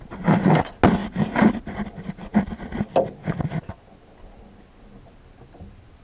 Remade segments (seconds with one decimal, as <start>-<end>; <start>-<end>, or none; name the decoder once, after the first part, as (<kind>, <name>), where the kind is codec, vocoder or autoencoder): 1.0-1.9 (vocoder, BigVGAN v2)